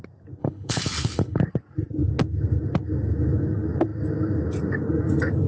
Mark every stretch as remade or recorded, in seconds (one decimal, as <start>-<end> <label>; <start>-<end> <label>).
0.0-0.4 recorded; 0.4-1.4 remade; 1.4-5.5 recorded